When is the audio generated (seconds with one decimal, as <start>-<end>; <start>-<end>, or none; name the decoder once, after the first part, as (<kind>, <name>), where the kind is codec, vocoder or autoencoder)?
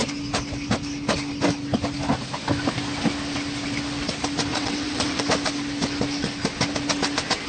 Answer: 4.5-5.2 (vocoder, WaveNeXt)